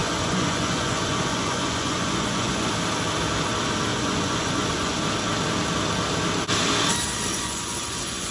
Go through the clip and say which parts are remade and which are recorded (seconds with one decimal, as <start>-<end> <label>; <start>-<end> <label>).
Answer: 0.0-2.7 remade; 2.7-3.9 recorded; 3.9-5.0 remade; 5.0-7.3 recorded; 7.3-8.3 remade